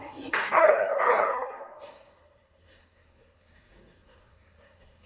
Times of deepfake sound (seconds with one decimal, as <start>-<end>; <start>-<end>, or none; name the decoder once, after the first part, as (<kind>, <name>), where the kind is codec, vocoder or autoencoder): 0.0-5.1 (codec, SNAC)

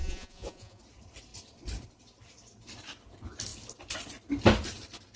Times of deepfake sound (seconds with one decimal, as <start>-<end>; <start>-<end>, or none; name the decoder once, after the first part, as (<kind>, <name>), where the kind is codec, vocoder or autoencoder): 0.0-0.8 (vocoder, Vocos)